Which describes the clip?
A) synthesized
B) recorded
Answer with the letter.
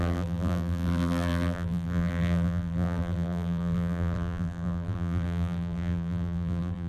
A